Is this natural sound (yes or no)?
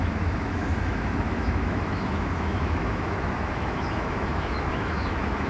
no